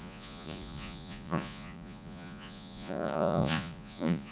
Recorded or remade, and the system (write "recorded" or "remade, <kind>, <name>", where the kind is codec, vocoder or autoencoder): remade, vocoder, Vocos